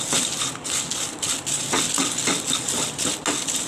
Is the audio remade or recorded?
recorded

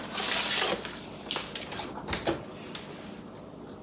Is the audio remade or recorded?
recorded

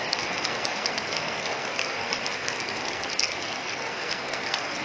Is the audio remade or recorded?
remade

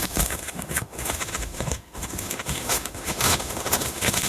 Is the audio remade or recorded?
remade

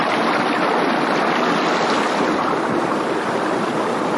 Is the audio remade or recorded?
recorded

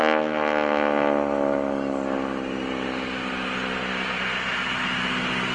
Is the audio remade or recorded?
recorded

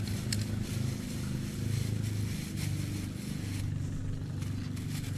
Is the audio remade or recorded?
recorded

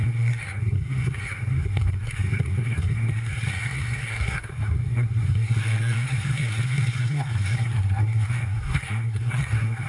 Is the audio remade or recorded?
remade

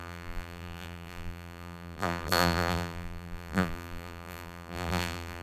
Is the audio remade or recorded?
remade